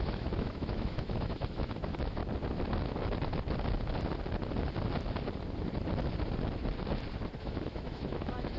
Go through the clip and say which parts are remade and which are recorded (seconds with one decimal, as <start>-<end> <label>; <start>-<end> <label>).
0.0-2.2 remade; 2.2-7.4 recorded; 7.4-8.6 remade